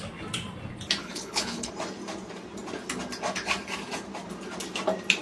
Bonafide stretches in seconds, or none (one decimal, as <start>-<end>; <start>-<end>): 0.0-1.0; 1.7-5.2